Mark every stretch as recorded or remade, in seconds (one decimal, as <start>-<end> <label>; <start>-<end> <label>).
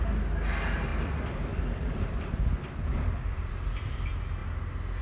0.0-0.9 recorded; 0.9-3.9 remade; 3.9-5.0 recorded